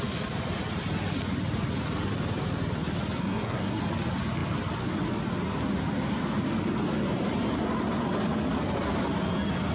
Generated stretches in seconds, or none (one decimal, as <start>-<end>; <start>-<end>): 3.2-3.8